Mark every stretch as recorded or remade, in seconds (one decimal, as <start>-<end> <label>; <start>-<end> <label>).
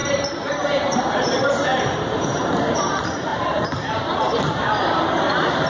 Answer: 0.0-5.7 remade